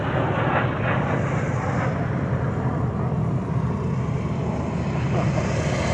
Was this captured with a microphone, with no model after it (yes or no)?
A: yes